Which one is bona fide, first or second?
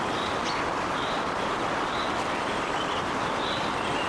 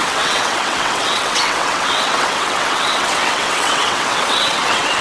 first